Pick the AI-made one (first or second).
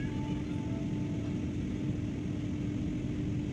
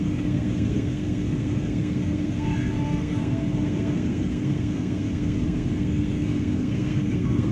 second